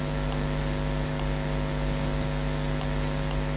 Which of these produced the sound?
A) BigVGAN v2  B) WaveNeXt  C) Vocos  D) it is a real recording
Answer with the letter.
D